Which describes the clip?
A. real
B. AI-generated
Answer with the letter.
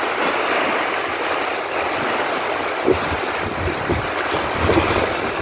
A